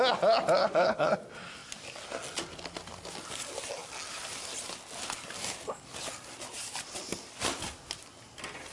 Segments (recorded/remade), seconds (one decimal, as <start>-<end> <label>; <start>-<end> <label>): 0.0-0.6 recorded; 0.6-1.1 remade; 1.1-8.7 recorded